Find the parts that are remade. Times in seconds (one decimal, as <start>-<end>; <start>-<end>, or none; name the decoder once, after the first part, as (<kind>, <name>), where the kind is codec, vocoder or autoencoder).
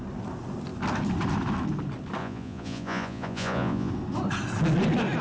2.2-3.9 (vocoder, Vocos)